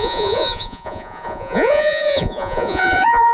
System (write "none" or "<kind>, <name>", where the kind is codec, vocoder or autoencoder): vocoder, Vocos